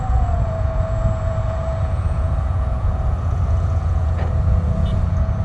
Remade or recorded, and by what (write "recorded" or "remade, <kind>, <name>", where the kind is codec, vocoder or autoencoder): remade, vocoder, Vocos